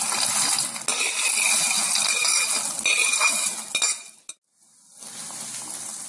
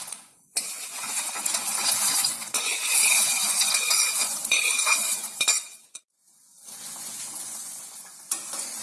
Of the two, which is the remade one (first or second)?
second